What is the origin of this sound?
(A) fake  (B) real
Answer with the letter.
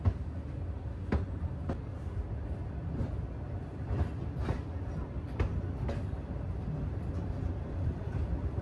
B